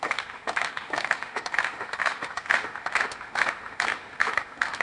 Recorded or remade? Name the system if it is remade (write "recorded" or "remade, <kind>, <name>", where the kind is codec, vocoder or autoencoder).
remade, autoencoder, DAC-VAE